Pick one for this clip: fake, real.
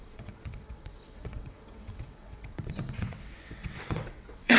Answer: fake